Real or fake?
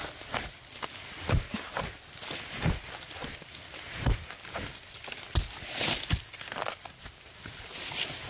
real